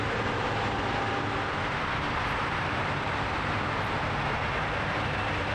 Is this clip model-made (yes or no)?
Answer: yes